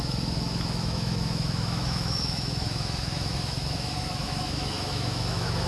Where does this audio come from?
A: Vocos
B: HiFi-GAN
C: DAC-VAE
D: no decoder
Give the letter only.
C